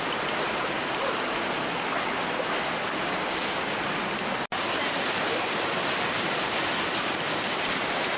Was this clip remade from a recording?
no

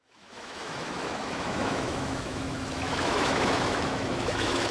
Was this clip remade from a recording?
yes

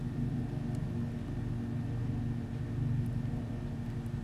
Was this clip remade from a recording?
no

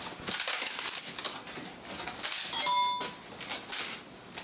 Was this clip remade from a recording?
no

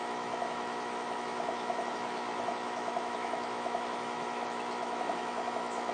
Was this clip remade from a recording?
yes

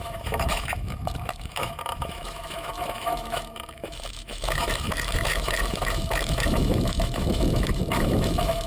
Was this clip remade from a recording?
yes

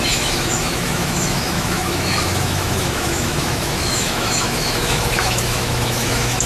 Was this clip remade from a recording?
yes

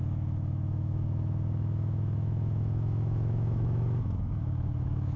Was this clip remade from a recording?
yes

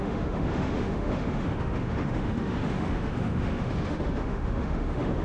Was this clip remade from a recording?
yes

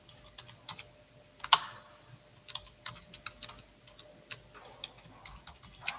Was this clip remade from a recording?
no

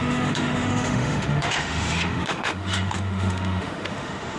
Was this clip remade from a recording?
yes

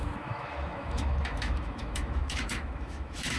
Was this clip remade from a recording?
yes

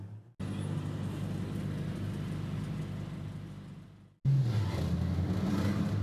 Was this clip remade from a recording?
no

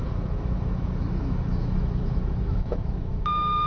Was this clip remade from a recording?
yes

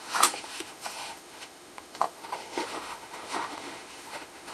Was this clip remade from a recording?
yes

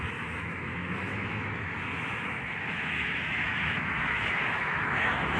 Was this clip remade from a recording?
yes